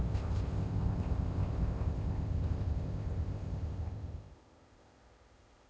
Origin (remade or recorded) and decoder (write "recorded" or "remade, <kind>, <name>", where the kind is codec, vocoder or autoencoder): remade, codec, ZipCodec